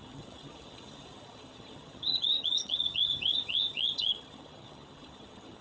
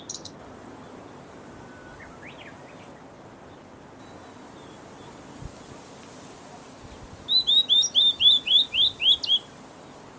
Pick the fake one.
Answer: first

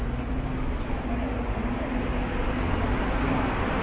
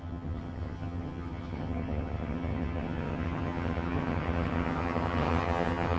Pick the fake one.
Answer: second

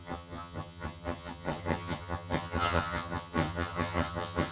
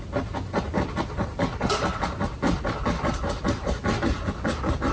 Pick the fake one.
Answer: first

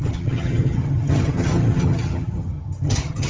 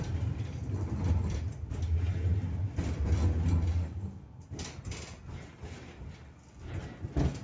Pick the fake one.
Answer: first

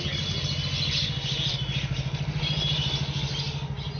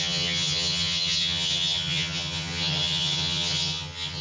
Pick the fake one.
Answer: second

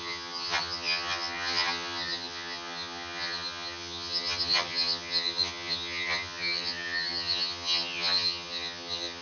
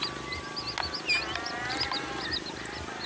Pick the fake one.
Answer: first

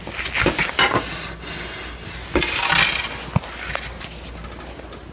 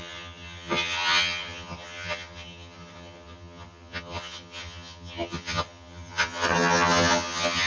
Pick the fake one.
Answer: second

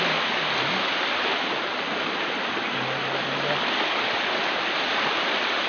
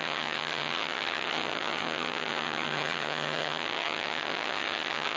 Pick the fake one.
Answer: second